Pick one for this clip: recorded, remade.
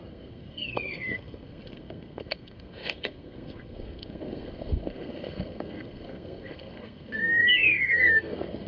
remade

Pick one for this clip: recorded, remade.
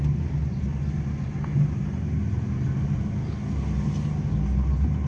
recorded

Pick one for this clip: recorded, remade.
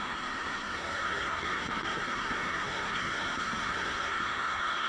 remade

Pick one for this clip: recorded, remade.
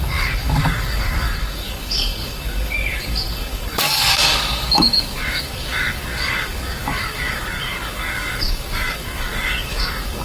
remade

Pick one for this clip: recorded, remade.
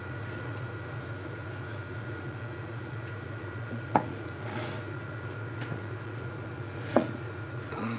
remade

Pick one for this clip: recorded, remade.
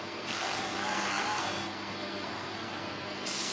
remade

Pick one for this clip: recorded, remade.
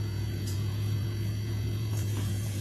remade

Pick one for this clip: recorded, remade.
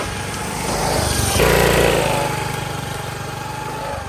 recorded